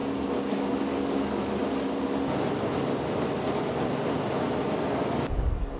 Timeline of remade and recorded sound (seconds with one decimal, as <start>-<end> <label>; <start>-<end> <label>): 0.0-0.5 recorded; 0.5-1.6 remade; 1.6-4.9 recorded; 4.9-5.8 remade